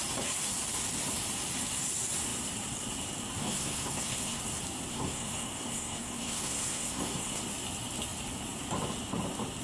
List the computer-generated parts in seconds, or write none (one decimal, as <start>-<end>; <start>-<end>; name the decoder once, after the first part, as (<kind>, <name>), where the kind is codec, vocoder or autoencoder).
3.4-4.4 (codec, SNAC); 4.9-7.4